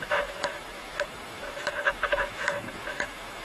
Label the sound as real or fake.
fake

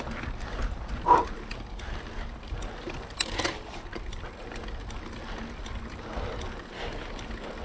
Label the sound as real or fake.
real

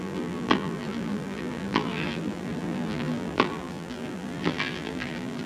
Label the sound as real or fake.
fake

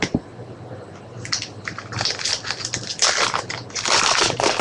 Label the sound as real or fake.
real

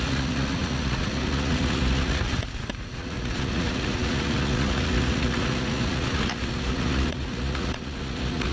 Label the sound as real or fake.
fake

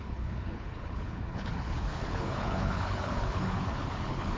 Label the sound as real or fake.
fake